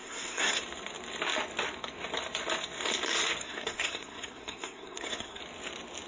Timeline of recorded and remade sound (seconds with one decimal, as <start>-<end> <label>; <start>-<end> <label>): 0.0-0.6 remade; 0.6-3.4 recorded; 3.4-5.4 remade; 5.4-6.1 recorded